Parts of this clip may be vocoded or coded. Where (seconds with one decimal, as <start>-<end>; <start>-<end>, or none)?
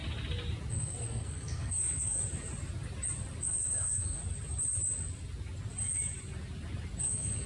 0.7-2.2; 3.4-4.2; 7.0-7.5